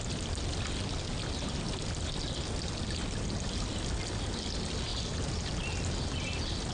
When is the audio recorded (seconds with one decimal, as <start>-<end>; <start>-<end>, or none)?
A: 0.0-4.9; 5.5-6.7